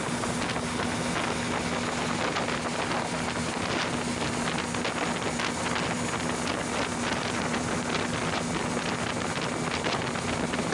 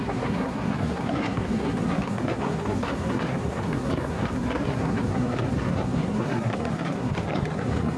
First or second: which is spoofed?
second